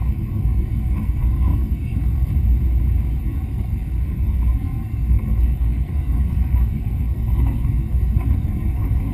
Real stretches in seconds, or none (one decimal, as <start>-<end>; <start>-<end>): 2.3-3.2